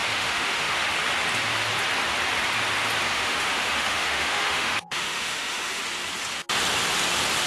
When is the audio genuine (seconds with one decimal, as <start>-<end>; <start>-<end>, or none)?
0.9-3.1; 5.8-7.5

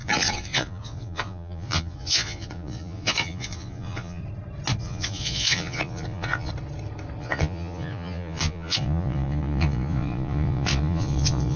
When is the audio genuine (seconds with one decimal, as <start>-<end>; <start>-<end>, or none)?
4.2-4.8; 6.5-7.2

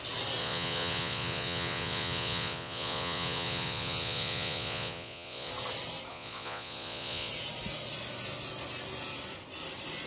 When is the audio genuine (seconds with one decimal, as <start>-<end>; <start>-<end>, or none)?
0.0-0.4; 5.5-6.1; 7.3-10.1

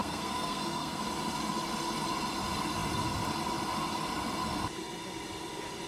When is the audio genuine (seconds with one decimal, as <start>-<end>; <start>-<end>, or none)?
1.0-5.9

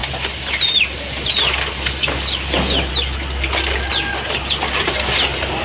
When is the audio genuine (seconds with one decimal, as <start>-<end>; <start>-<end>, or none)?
0.0-5.6

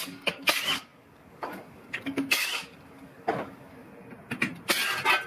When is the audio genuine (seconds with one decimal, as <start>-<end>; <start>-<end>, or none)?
3.9-5.3